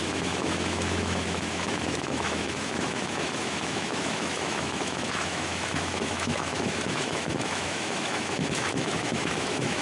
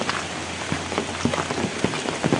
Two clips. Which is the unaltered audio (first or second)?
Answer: second